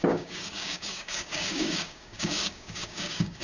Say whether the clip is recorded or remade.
remade